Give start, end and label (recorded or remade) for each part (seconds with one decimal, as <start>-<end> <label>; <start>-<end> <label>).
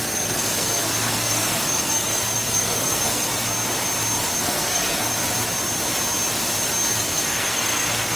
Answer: 0.0-3.3 remade; 3.3-4.4 recorded; 4.4-5.1 remade; 5.1-6.9 recorded; 6.9-8.2 remade